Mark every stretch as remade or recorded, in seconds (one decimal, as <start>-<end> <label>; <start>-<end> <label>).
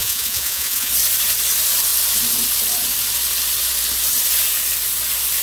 0.0-0.9 remade; 0.9-5.4 recorded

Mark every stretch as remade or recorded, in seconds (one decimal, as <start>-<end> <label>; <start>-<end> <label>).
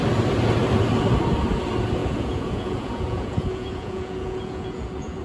0.0-2.0 recorded; 2.0-5.2 remade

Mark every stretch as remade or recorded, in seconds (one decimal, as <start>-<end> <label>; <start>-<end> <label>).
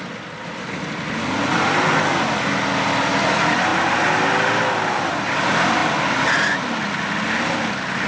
0.0-8.1 recorded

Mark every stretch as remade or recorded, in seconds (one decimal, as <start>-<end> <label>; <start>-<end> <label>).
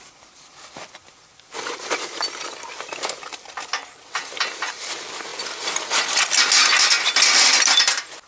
0.0-8.3 recorded